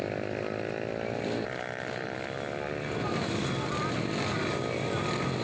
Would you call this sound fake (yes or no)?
no